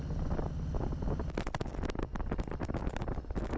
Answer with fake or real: real